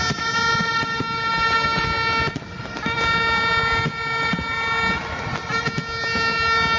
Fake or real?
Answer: real